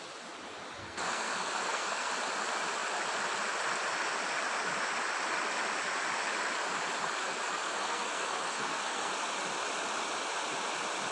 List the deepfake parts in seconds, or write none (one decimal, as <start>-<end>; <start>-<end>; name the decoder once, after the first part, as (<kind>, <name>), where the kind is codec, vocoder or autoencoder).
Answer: 0.8-2.1 (codec, SNAC); 7.2-9.1

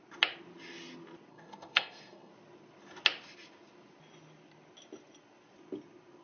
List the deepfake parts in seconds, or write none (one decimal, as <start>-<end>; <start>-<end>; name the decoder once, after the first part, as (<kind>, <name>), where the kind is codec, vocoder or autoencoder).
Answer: 1.3-2.3 (codec, SNAC)

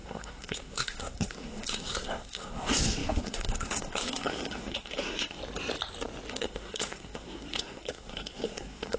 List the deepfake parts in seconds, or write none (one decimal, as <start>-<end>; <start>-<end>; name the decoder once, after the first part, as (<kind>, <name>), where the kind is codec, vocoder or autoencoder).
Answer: 0.0-5.4 (codec, SNAC); 6.3-9.0

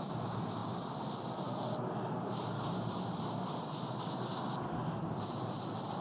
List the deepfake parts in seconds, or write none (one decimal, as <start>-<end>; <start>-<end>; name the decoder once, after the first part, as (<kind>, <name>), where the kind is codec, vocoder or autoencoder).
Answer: none

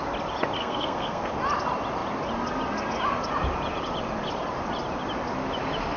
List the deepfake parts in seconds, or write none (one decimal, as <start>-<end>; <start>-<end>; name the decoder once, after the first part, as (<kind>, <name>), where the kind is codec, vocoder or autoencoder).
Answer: 0.6-1.3 (codec, SNAC)

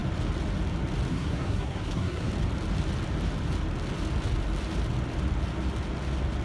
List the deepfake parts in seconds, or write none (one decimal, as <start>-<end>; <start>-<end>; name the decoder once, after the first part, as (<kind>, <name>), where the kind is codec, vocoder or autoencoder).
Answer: 1.1-2.3 (codec, SNAC)